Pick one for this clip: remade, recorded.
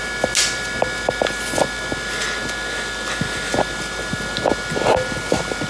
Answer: recorded